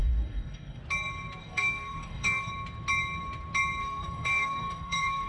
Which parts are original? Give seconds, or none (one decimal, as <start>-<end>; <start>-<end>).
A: 0.8-1.4; 2.5-3.8